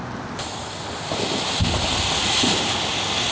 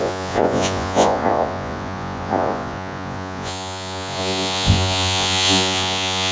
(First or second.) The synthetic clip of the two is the second